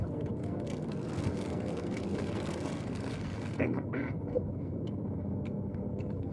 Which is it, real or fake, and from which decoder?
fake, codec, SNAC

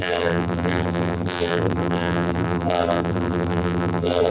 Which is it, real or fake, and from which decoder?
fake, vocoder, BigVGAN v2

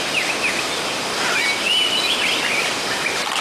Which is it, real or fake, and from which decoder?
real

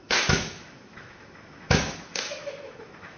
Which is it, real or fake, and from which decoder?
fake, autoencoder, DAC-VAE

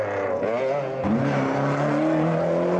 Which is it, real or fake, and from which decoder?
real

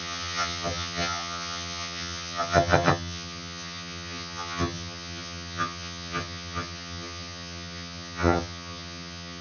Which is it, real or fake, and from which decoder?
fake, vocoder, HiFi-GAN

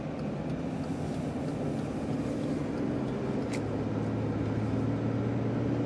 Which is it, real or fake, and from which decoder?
real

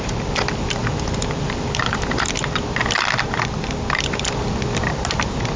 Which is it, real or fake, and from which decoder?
real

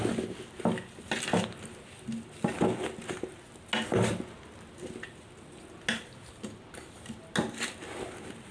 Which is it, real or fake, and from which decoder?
real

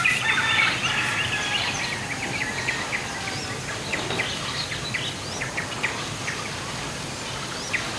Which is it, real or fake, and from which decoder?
real